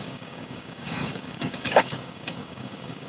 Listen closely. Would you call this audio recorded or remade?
remade